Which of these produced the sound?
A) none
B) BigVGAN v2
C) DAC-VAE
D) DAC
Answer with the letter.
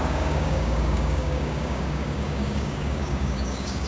D